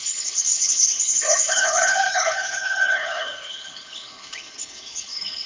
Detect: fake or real fake